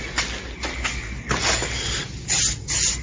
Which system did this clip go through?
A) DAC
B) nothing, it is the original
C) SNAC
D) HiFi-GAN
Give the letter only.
B